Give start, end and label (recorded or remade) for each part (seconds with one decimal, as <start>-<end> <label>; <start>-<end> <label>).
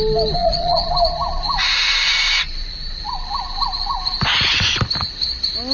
0.0-0.4 recorded; 0.4-0.9 remade; 0.9-5.7 recorded